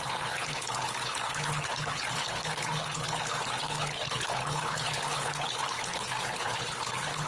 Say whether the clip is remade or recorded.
remade